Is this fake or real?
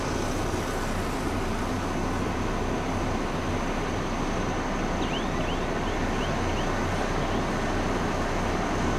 real